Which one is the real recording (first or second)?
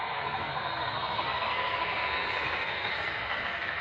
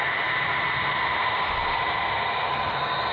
second